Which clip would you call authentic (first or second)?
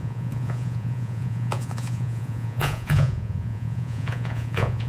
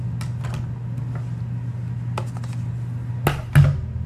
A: second